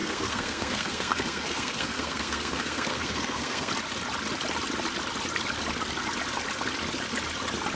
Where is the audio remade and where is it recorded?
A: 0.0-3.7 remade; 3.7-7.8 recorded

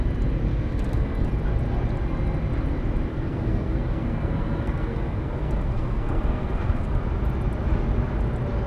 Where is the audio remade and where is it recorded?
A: 0.0-0.5 recorded; 0.5-1.3 remade; 1.3-3.1 recorded; 3.1-7.0 remade; 7.0-8.7 recorded

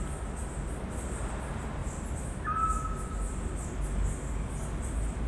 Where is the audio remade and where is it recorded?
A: 0.0-5.3 recorded